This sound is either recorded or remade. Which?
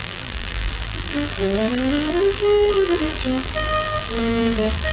remade